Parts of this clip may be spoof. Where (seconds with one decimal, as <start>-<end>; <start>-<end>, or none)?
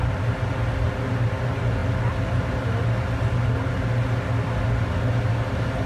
none